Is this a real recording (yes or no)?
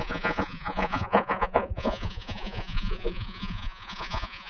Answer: no